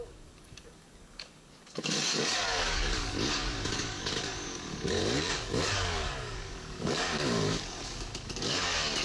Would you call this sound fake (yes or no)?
yes